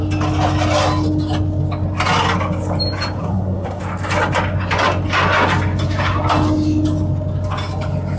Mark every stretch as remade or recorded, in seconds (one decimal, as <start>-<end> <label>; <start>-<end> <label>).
0.0-3.2 recorded; 3.2-3.8 remade; 3.8-8.2 recorded